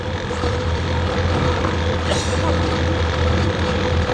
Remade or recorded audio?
remade